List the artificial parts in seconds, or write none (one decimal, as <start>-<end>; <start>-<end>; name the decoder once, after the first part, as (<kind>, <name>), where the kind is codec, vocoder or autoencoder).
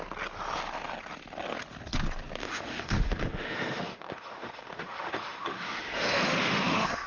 2.4-7.1 (autoencoder, DAC-VAE)